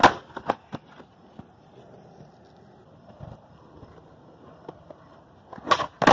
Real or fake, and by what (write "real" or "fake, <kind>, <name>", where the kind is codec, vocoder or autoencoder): real